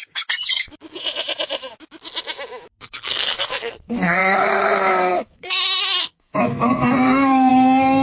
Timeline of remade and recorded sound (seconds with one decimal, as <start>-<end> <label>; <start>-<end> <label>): 0.0-0.7 remade; 0.7-2.7 recorded; 2.7-8.0 remade